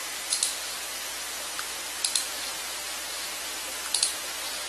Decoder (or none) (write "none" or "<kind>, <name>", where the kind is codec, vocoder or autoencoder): none